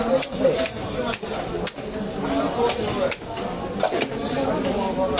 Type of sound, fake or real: real